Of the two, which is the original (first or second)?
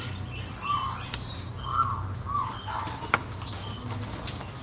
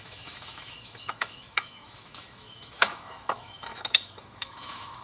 first